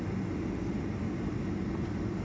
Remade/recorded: recorded